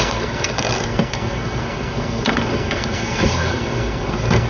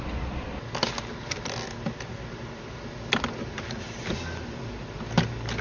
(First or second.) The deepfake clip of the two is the first